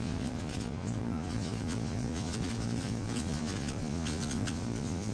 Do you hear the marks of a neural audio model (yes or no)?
yes